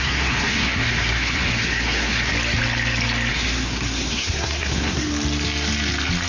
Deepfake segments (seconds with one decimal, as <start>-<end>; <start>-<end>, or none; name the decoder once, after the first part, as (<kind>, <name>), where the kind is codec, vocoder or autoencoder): 0.0-2.3 (codec, SNAC); 3.3-5.1